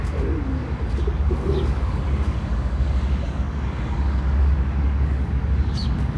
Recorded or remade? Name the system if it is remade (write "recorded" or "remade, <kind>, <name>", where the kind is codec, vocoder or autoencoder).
remade, codec, DAC